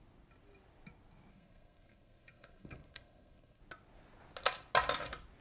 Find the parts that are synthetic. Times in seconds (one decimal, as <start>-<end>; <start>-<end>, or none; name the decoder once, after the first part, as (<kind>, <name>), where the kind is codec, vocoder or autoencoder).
1.3-3.6 (codec, SNAC)